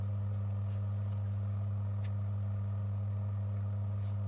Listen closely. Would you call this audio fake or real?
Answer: real